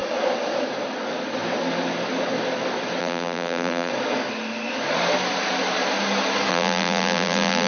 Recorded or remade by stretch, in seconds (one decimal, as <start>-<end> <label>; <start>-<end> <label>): 0.0-3.0 recorded; 3.0-3.9 remade; 3.9-6.5 recorded; 6.5-7.7 remade